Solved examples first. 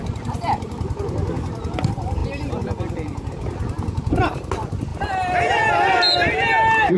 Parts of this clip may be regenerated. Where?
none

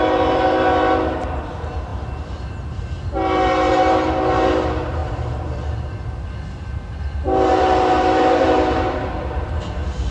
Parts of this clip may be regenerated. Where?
0.0-10.1 (vocoder, BigVGAN v2)